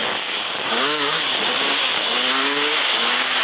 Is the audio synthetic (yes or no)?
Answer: yes